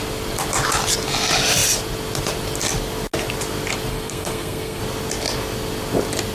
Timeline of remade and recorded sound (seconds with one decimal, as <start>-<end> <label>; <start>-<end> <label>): 0.0-3.9 recorded; 3.9-4.8 remade; 4.8-6.3 recorded